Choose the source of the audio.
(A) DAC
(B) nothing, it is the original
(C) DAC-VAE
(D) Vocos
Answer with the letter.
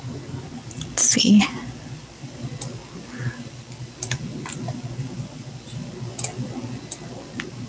B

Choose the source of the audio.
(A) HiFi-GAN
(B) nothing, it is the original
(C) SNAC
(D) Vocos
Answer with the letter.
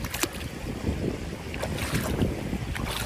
B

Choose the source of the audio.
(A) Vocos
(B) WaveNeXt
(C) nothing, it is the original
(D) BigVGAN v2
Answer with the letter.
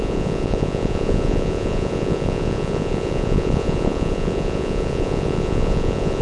A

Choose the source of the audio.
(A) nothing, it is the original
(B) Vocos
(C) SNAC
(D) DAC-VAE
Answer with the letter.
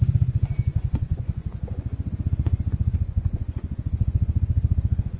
B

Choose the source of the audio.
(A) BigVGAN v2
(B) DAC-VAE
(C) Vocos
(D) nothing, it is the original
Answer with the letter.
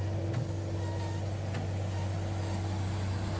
D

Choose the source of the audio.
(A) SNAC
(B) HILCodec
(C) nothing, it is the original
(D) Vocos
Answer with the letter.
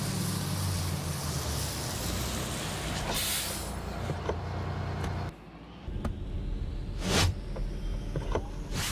C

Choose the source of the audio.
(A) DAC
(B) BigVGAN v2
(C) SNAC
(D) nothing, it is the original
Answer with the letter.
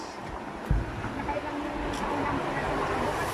D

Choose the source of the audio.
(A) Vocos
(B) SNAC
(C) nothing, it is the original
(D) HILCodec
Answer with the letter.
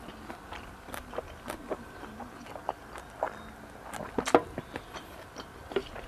C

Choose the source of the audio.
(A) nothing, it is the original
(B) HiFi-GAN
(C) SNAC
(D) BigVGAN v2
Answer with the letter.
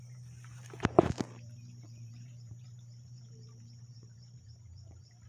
D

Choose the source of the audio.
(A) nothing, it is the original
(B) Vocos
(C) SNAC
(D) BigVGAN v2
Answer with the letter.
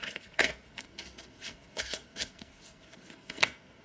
C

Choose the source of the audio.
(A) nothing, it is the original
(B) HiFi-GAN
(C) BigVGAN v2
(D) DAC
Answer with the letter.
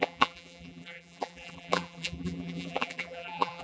C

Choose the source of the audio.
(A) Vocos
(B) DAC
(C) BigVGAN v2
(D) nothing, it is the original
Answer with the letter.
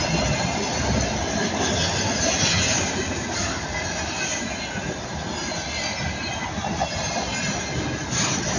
D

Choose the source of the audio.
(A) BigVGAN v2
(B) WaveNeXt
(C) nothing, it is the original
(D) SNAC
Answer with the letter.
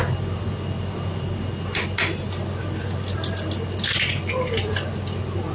C